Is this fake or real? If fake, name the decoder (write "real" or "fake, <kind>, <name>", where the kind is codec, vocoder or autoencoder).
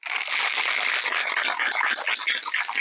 real